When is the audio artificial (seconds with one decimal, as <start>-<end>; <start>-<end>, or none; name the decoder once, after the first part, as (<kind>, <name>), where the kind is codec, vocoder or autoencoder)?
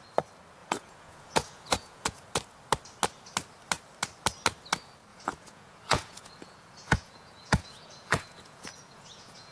0.6-2.2 (vocoder, Vocos); 5.1-9.5